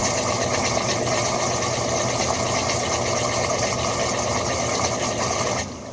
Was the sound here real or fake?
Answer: real